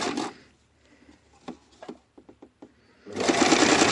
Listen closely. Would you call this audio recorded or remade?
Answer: recorded